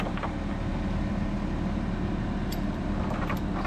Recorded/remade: recorded